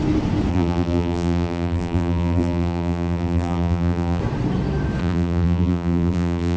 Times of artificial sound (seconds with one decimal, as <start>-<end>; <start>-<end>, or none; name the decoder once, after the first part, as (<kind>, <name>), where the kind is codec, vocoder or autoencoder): 0.5-4.2 (vocoder, BigVGAN v2); 5.0-6.6